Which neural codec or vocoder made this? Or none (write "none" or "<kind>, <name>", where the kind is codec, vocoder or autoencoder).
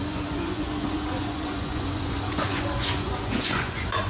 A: vocoder, Vocos